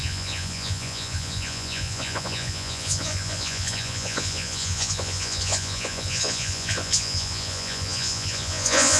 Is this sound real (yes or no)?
no